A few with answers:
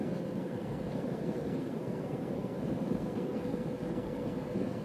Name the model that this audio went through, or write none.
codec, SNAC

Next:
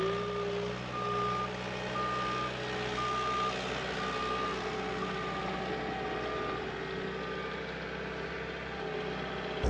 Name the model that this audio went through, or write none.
none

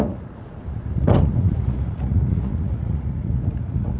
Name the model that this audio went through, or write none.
vocoder, Vocos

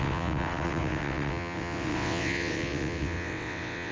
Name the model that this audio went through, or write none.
vocoder, WaveNeXt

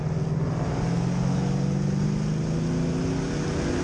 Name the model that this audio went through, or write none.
none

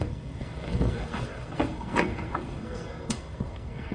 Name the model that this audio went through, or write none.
codec, SNAC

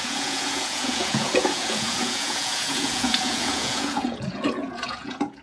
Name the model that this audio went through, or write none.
vocoder, Vocos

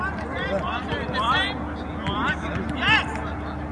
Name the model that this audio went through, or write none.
none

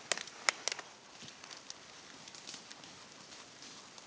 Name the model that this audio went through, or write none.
none